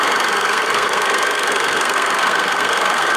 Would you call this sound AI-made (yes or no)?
yes